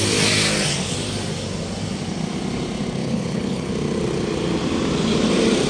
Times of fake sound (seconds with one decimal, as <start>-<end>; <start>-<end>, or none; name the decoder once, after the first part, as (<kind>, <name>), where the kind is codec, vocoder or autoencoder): 3.0-3.7 (codec, HILCodec)